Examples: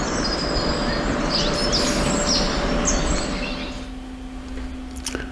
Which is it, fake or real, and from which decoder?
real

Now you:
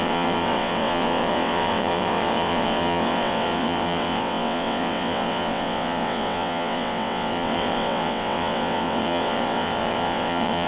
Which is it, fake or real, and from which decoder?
fake, vocoder, WaveNeXt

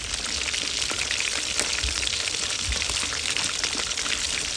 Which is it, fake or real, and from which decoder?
real